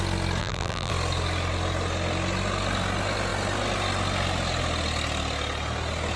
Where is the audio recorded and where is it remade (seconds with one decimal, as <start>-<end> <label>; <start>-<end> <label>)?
0.0-0.4 recorded; 0.4-0.9 remade; 0.9-6.2 recorded